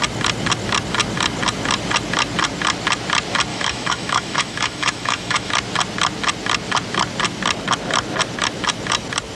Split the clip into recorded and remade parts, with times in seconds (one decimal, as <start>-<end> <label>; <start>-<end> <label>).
0.0-3.5 recorded; 3.5-5.5 remade; 5.5-9.3 recorded